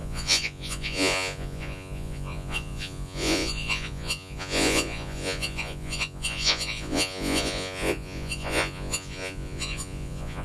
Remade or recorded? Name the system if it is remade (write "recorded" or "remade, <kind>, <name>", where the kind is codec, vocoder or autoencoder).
remade, vocoder, Vocos